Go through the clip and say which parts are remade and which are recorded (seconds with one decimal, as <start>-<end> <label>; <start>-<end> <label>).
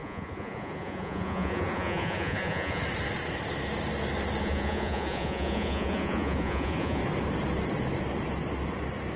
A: 0.0-2.8 remade; 2.8-4.4 recorded; 4.4-7.0 remade; 7.0-9.2 recorded